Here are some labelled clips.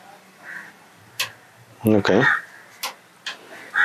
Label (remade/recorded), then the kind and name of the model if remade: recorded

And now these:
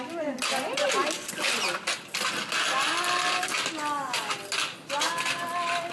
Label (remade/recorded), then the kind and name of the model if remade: recorded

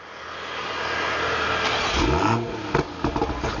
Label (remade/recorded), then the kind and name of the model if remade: recorded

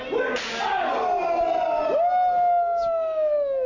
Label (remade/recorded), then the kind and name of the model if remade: recorded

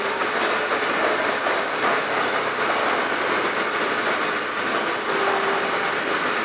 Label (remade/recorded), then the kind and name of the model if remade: recorded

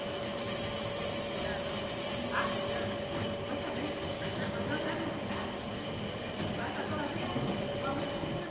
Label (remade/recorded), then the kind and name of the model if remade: recorded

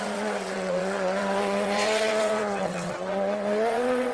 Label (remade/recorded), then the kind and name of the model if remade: remade, vocoder, WaveNeXt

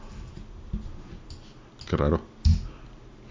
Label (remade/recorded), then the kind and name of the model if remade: recorded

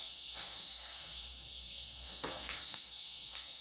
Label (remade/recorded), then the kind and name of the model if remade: remade, codec, SNAC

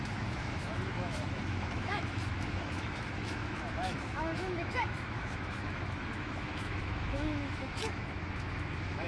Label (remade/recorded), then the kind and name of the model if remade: remade, autoencoder, DAC-VAE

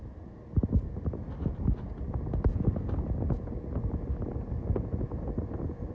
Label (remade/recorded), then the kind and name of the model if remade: recorded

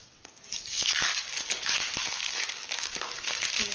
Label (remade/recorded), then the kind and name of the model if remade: remade, codec, DAC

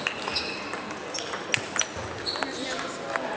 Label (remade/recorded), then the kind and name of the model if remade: recorded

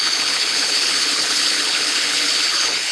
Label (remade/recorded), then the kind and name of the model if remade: remade, codec, HILCodec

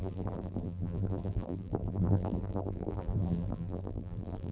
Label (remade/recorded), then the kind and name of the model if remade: remade, vocoder, BigVGAN v2